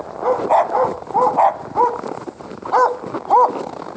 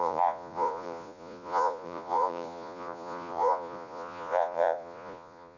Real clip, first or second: first